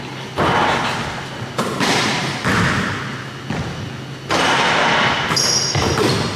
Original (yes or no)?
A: yes